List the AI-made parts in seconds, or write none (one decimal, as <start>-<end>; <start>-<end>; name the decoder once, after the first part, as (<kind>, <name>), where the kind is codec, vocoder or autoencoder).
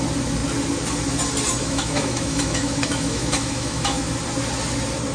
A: 1.6-4.1 (autoencoder, DAC-VAE)